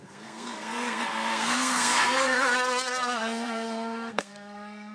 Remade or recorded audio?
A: remade